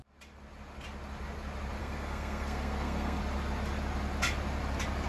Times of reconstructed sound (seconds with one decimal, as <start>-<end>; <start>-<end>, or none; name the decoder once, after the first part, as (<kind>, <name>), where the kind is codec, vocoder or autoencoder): 1.8-3.2 (codec, SNAC)